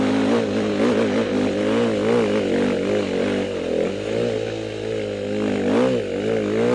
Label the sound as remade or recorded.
recorded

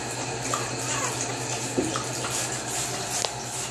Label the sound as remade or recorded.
recorded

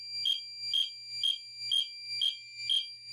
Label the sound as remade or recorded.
recorded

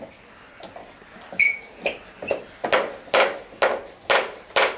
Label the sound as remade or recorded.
recorded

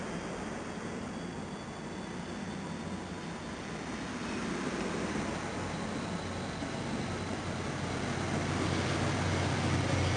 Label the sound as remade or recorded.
recorded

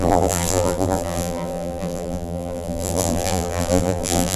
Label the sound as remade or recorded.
remade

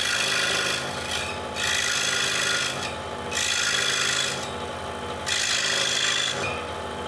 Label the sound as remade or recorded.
recorded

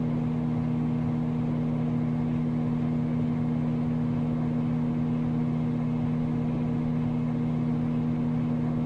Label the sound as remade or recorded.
recorded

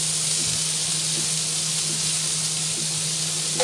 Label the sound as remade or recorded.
recorded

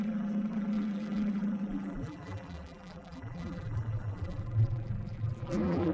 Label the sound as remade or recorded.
remade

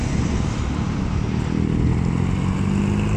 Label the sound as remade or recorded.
recorded